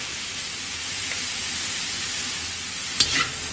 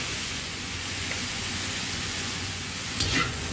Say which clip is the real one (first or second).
first